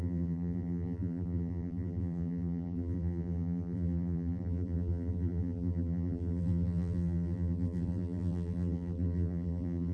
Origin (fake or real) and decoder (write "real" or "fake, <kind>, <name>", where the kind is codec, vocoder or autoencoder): fake, vocoder, BigVGAN v2